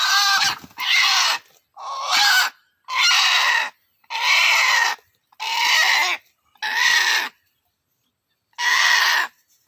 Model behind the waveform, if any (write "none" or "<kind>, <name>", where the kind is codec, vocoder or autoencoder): none